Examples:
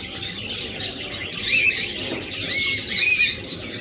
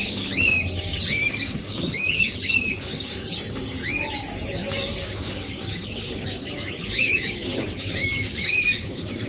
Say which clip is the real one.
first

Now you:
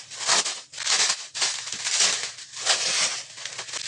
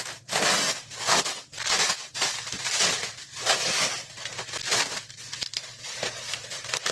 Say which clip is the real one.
first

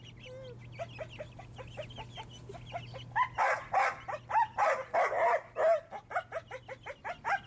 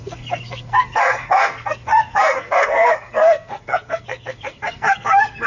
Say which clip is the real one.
first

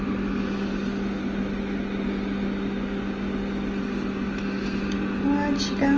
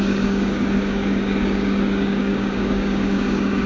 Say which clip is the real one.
first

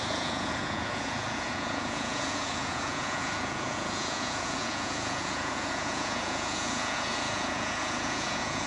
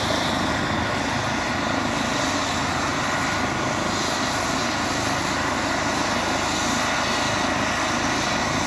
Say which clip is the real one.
second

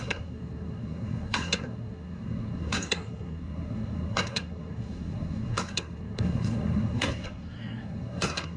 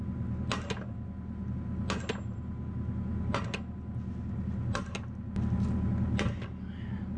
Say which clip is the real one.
second